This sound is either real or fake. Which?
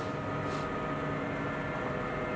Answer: real